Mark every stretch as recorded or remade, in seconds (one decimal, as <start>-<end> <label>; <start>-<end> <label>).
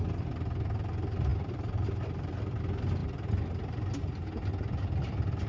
0.0-1.3 recorded; 1.3-2.6 remade; 2.6-5.5 recorded